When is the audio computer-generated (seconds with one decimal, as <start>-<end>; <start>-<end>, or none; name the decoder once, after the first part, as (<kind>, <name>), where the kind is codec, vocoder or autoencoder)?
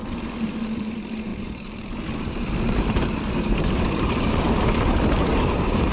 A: 0.8-5.9 (vocoder, BigVGAN v2)